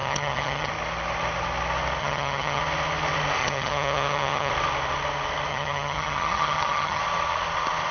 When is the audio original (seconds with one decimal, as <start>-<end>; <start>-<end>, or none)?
0.7-2.0; 2.6-3.4; 4.5-5.5; 7.0-7.9